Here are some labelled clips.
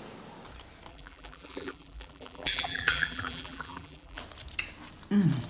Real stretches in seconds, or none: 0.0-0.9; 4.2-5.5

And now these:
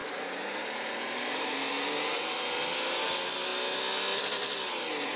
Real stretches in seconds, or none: 3.1-5.2

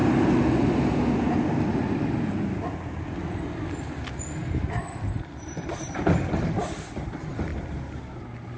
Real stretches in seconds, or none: 0.0-4.4; 6.5-8.6

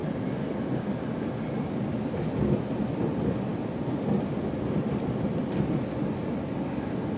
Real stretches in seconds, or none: 0.0-7.2

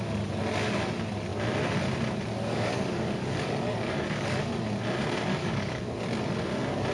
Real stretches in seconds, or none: 0.0-2.5; 4.4-5.4; 6.0-6.9

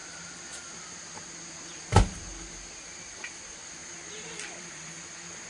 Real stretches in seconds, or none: 0.0-5.5